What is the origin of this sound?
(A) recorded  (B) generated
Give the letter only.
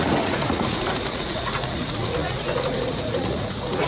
B